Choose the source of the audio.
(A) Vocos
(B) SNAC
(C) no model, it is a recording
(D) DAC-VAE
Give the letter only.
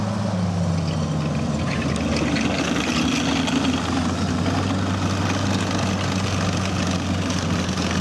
C